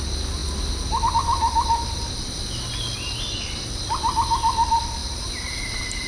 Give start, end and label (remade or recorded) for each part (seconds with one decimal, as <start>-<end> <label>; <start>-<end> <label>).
0.0-6.1 recorded